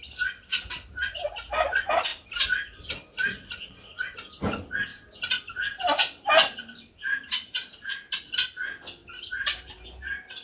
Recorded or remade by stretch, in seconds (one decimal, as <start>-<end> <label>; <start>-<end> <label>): 0.0-2.1 recorded; 2.1-4.0 remade; 4.0-4.9 recorded; 4.9-7.9 remade; 7.9-10.4 recorded